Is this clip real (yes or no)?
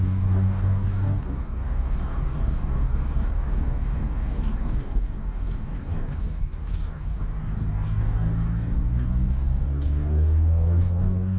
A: no